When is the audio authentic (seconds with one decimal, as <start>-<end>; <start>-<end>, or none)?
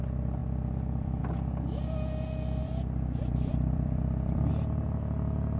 0.0-0.4; 1.2-2.6; 4.5-5.6